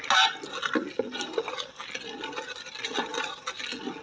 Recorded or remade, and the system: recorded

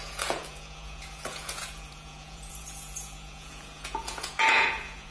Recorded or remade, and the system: remade, vocoder, Vocos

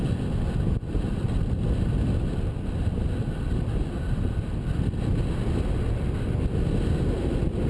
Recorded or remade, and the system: recorded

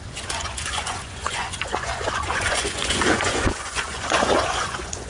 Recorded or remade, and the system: remade, vocoder, Vocos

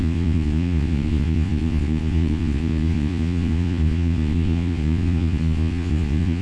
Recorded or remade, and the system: remade, vocoder, Vocos